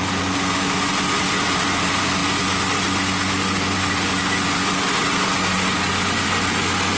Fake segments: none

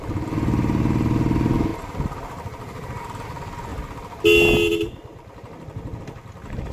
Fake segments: 1.7-3.0 (vocoder, BigVGAN v2)

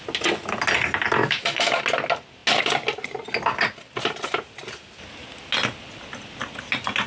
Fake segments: 1.2-1.8 (autoencoder, DAC-VAE)